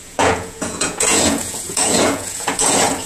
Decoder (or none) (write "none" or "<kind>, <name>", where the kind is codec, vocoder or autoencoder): vocoder, Vocos